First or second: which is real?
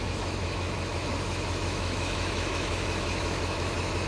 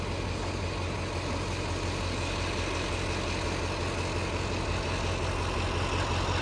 second